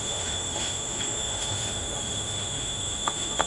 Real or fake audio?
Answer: fake